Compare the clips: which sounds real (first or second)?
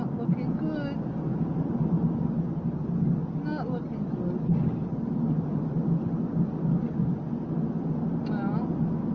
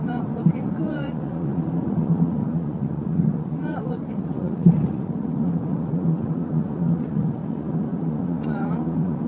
first